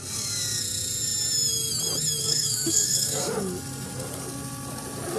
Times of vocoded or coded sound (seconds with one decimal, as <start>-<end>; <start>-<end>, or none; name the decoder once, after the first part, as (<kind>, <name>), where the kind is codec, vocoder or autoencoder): 2.2-3.3 (codec, SNAC)